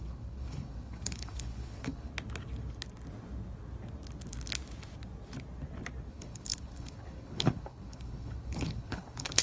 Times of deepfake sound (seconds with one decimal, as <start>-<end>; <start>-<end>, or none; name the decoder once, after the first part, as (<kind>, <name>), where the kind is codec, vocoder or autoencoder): 0.0-2.1 (codec, HILCodec); 6.1-9.4